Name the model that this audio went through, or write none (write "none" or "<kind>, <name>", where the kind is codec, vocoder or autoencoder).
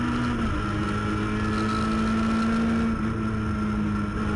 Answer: none